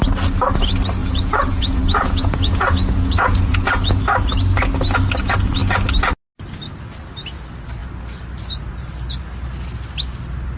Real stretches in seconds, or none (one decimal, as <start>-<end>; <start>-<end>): 0.0-1.0; 4.0-10.6